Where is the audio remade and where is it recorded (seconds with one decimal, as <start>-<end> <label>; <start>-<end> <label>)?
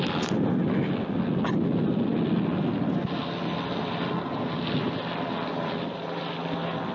0.0-6.9 recorded